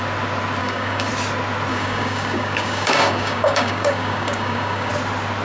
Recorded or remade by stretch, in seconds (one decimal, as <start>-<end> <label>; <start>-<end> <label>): 0.0-0.6 recorded; 0.6-1.1 remade; 1.1-1.7 recorded; 1.7-4.9 remade; 4.9-5.4 recorded